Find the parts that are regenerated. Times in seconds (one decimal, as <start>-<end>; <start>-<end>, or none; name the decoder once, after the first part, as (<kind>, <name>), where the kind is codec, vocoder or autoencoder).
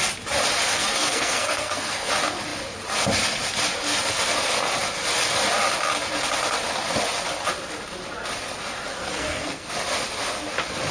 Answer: 0.7-2.1 (codec, SNAC); 8.9-9.7